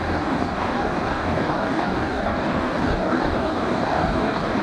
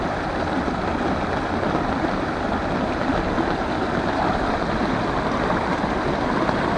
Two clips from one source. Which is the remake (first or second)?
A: first